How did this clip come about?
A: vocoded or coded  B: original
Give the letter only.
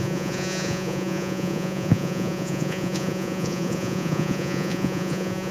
A